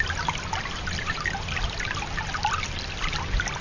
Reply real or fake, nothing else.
real